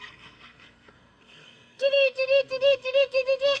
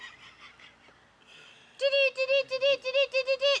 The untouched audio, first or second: second